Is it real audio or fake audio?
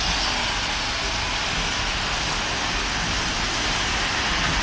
real